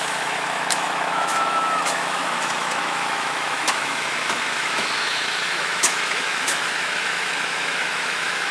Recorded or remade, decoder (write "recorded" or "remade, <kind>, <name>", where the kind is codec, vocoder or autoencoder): remade, autoencoder, DAC-VAE